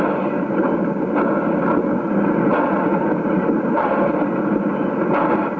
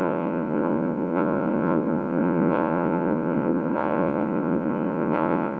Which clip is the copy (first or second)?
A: second